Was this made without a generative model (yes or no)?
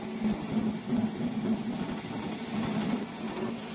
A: yes